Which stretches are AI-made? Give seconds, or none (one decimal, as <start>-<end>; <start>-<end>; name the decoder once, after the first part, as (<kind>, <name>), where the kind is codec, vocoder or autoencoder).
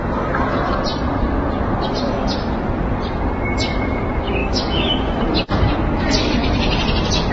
4.4-5.0 (autoencoder, DAC-VAE)